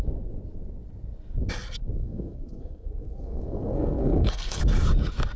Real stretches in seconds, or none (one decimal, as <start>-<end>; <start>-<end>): 0.0-2.0; 4.6-5.4